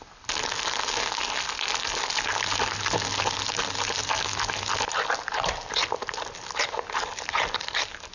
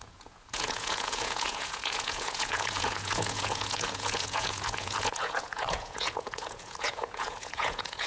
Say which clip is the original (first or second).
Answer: first